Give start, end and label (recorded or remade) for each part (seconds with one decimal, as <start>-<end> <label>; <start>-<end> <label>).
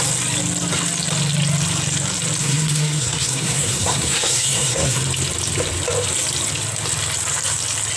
0.0-2.4 recorded; 2.4-5.0 remade; 5.0-8.0 recorded